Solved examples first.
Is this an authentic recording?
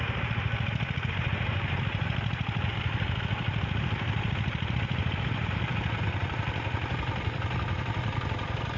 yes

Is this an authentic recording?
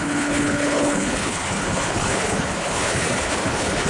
no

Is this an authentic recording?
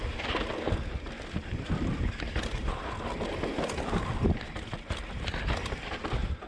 yes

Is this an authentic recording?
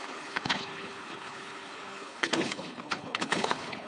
no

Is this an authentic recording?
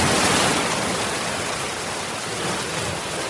yes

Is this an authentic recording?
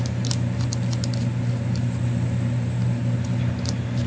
yes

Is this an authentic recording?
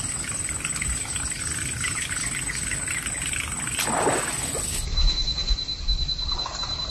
yes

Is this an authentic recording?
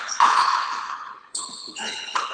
no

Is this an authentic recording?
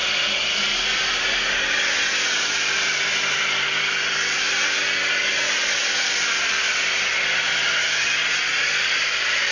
yes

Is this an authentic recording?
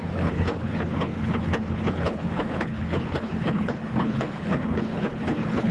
no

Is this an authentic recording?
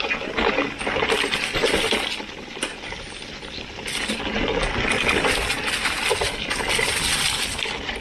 yes